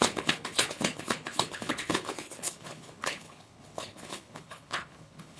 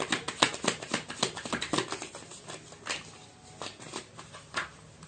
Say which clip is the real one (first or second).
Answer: second